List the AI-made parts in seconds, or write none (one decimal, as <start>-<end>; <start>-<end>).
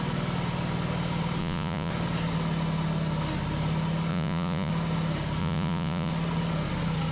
1.4-1.9; 4.1-4.7; 5.4-6.1